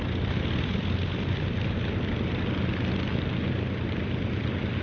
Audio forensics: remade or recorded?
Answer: recorded